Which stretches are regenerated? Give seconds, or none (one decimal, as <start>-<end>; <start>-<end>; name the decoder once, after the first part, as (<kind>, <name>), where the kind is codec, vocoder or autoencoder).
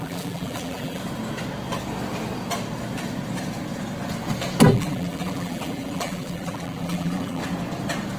0.0-1.0 (vocoder, BigVGAN v2); 4.7-7.4